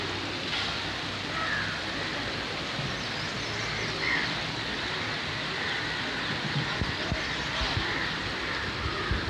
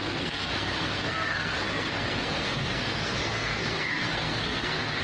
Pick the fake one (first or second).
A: second